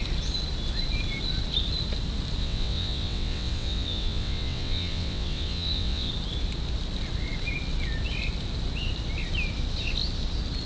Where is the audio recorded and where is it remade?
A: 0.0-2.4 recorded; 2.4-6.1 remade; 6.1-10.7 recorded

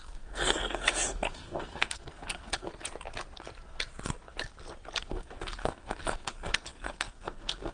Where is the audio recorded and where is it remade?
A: 0.0-2.7 remade; 2.7-5.0 recorded; 5.0-7.7 remade

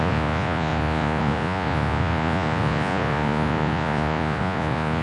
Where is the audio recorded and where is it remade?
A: 0.0-5.0 remade

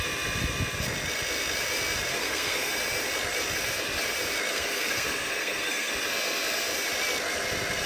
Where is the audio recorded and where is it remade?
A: 0.0-2.1 recorded; 2.1-2.7 remade; 2.7-4.5 recorded; 4.5-5.9 remade; 5.9-7.9 recorded

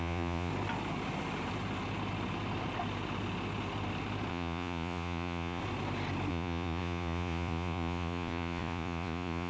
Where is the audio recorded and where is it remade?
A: 0.0-0.5 remade; 0.5-4.3 recorded; 4.3-5.6 remade; 5.6-6.3 recorded; 6.3-9.5 remade

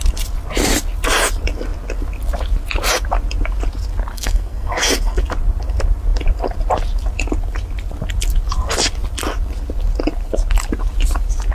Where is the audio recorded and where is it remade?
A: 0.0-4.1 recorded; 4.1-5.2 remade; 5.2-11.5 recorded

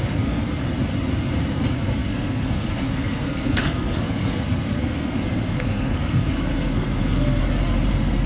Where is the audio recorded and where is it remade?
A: 0.0-0.4 remade; 0.4-1.5 recorded; 1.5-7.4 remade; 7.4-7.9 recorded; 7.9-8.3 remade